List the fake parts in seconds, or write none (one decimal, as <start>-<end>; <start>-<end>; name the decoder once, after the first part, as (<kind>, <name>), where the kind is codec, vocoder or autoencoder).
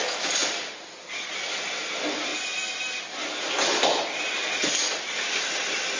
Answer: none